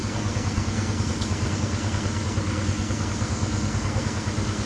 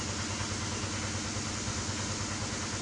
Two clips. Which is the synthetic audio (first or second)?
first